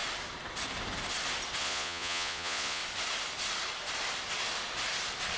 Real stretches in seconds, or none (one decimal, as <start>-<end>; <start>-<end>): 0.0-1.6; 2.8-5.4